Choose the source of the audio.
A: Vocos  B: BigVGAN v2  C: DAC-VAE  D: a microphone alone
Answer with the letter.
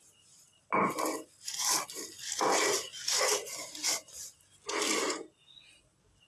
D